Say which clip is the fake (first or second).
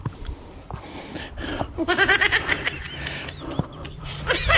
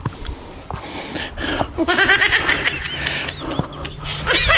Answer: first